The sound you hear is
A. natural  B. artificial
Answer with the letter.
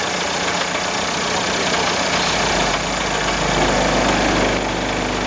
A